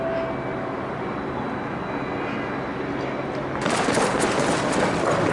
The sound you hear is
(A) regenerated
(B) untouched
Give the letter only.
B